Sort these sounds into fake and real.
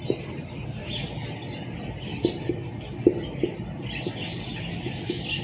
real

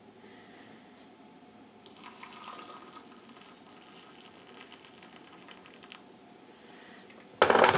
real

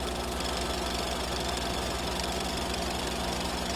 real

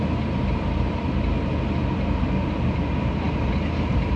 fake